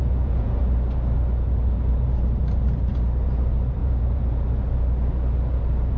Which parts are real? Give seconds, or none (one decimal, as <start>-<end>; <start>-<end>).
0.6-3.8; 4.4-6.0